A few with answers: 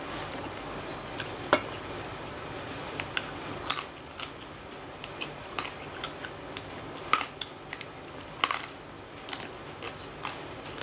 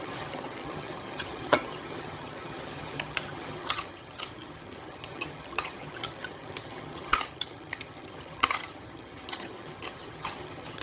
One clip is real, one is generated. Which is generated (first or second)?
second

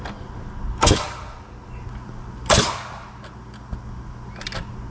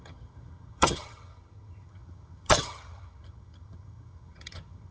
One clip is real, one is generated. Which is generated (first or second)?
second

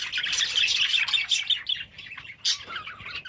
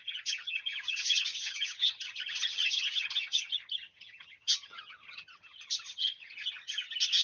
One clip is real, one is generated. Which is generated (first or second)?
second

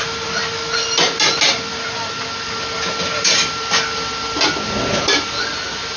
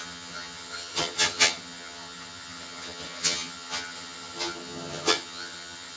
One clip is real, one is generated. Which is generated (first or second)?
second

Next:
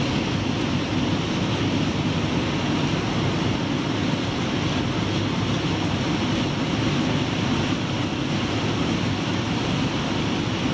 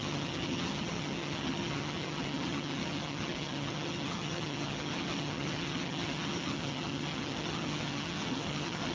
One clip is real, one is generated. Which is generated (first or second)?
second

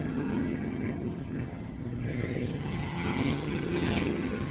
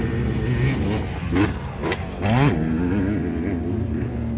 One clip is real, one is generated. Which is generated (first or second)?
first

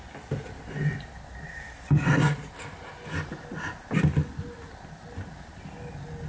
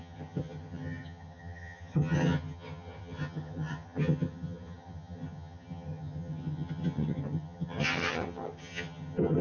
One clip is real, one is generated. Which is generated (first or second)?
second